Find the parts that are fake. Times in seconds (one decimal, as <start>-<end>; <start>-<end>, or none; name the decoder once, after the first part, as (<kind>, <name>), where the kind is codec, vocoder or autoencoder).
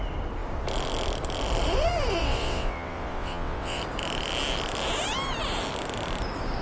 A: 2.2-3.8 (vocoder, WaveNeXt)